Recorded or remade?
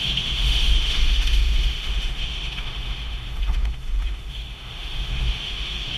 remade